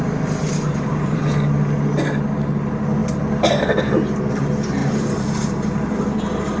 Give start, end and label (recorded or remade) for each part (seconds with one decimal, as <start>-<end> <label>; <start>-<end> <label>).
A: 0.0-0.4 recorded; 0.4-1.2 remade; 1.2-4.8 recorded; 4.8-6.6 remade